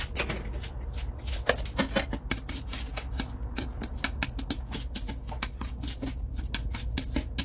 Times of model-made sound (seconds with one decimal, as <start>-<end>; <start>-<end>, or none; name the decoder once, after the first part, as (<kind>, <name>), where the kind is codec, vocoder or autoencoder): none